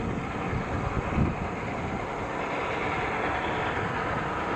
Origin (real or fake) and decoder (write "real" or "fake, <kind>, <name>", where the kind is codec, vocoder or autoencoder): real